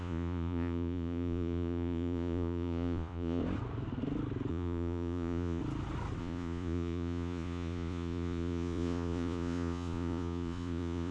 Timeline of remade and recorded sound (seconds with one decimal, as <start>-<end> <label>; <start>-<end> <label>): 0.0-3.4 remade; 3.4-4.5 recorded; 4.5-5.6 remade; 5.6-6.2 recorded; 6.2-11.1 remade

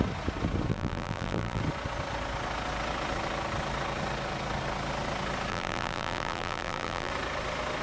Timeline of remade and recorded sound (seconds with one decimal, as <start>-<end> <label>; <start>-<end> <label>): 0.0-0.7 recorded; 0.7-1.6 remade; 1.6-5.5 recorded; 5.5-7.1 remade; 7.1-7.8 recorded

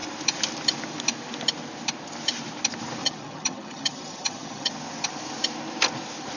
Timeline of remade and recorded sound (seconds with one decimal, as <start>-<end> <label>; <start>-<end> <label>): 0.0-3.0 recorded; 3.0-4.7 remade; 4.7-6.4 recorded